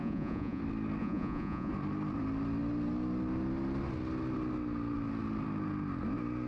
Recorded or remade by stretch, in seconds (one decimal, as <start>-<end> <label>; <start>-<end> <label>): 0.0-0.6 remade; 0.6-1.0 recorded; 1.0-1.7 remade; 1.7-6.5 recorded